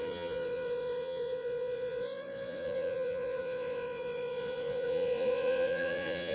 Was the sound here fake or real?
fake